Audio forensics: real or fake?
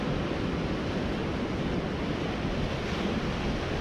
real